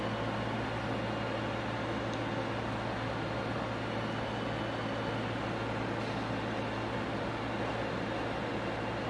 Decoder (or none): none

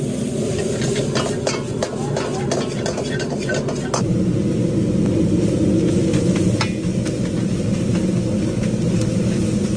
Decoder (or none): none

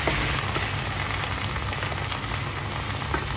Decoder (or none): none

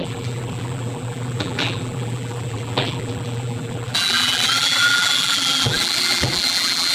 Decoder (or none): vocoder, BigVGAN v2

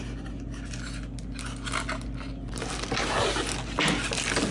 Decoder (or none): none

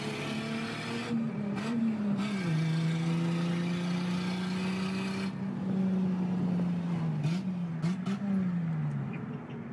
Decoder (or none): none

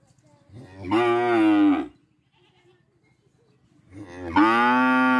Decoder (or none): none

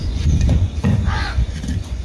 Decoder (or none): vocoder, Vocos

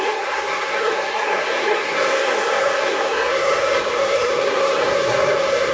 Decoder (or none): codec, SNAC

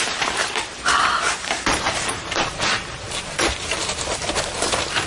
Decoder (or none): vocoder, BigVGAN v2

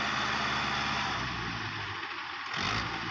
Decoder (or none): none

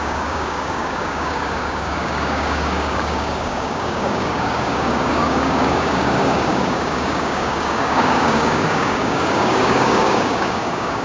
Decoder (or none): codec, DAC